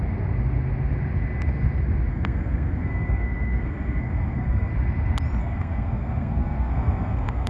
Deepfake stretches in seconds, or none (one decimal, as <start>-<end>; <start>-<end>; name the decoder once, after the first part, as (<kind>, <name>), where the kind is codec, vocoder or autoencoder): 2.1-4.7 (codec, SNAC); 5.4-7.5